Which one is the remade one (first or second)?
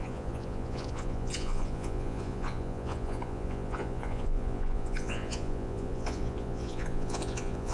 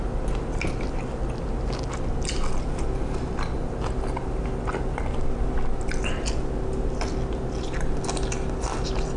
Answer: first